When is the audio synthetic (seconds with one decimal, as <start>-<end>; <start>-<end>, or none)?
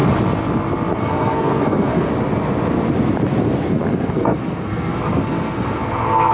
1.0-2.1; 3.9-6.3